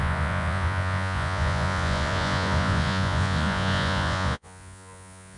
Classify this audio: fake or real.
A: fake